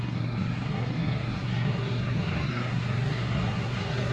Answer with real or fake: fake